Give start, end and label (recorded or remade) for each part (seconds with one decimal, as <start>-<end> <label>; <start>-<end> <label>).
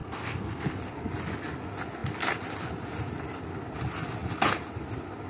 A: 0.0-0.8 remade; 0.8-5.3 recorded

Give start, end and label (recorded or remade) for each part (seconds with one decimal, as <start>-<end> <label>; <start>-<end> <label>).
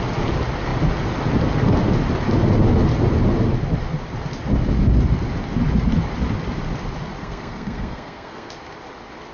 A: 0.0-7.2 recorded; 7.2-8.5 remade; 8.5-9.3 recorded